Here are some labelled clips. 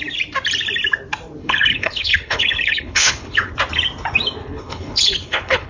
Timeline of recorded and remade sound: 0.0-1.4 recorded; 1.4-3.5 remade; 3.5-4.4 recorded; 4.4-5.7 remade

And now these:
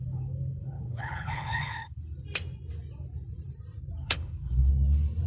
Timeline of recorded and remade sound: 0.0-2.0 remade; 2.0-4.0 recorded; 4.0-4.7 remade; 4.7-5.3 recorded

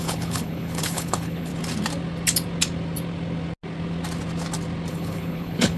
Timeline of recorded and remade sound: 0.0-1.5 remade; 1.5-4.9 recorded; 4.9-5.8 remade